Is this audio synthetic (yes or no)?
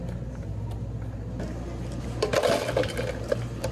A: no